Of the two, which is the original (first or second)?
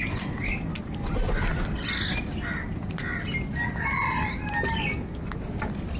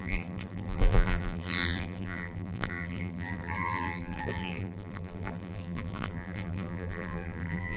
first